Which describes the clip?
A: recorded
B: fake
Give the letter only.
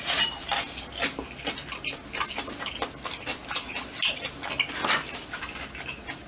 A